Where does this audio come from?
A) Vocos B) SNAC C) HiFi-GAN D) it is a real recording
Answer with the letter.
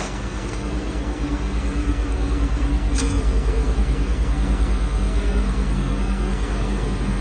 B